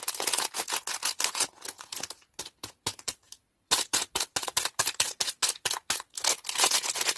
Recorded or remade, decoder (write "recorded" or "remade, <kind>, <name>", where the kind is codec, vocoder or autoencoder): remade, vocoder, Vocos